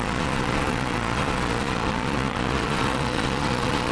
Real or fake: fake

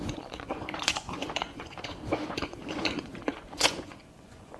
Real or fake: fake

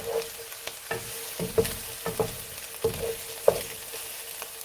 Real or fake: real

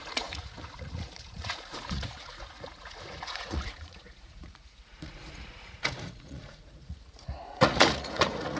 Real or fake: fake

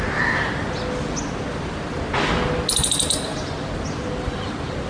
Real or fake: real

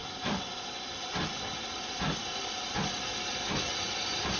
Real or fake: real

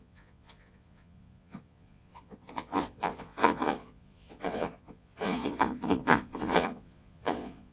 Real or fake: fake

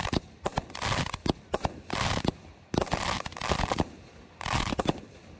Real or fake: real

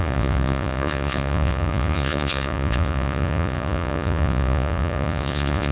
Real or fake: fake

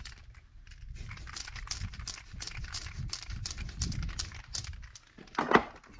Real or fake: real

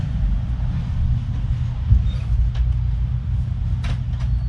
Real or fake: real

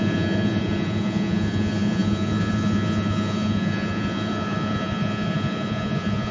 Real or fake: fake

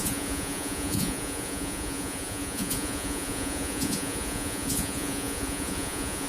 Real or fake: fake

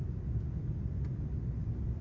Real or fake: real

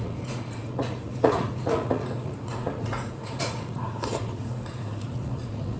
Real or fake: fake